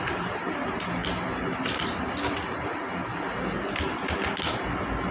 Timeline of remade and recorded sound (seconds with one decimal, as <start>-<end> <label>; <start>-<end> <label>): 0.0-5.1 recorded